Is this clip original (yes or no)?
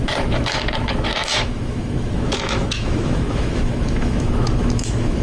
no